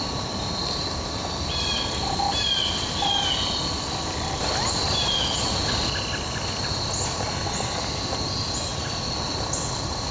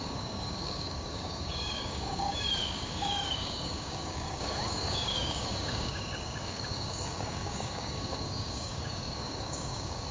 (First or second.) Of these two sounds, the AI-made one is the second